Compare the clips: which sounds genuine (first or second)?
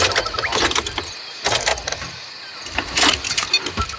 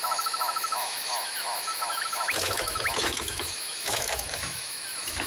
first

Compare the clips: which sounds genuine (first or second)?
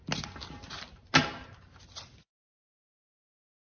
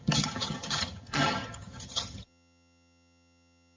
first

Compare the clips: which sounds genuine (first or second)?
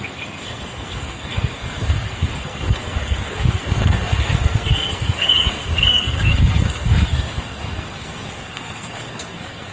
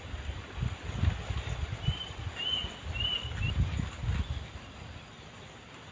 second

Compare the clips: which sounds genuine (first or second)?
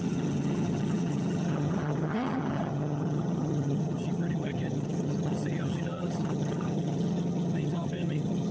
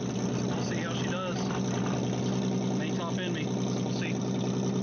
second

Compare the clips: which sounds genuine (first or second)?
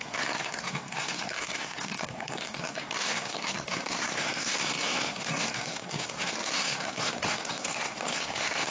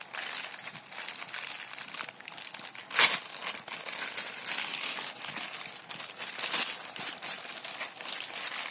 second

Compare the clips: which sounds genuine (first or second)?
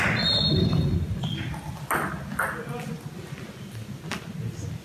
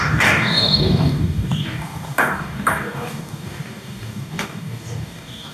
first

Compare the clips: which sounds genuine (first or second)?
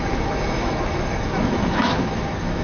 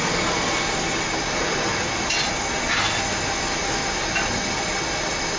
second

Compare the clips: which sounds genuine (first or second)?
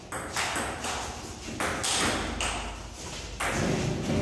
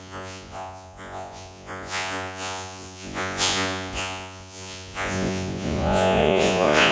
first